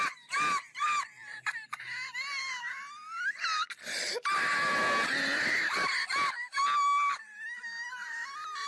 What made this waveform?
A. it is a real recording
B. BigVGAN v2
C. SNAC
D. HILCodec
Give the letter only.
A